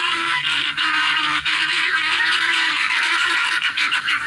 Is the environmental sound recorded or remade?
remade